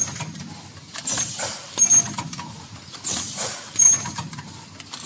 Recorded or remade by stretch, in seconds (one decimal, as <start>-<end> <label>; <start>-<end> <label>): 0.0-2.5 recorded; 2.5-3.7 remade; 3.7-5.1 recorded